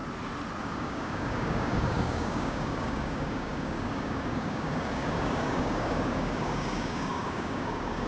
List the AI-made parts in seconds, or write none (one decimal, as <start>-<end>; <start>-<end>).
0.6-8.1